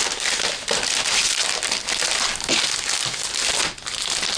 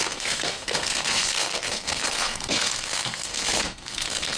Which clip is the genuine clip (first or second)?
first